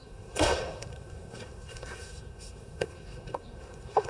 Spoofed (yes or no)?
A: yes